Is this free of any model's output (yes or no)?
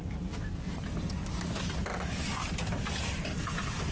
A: yes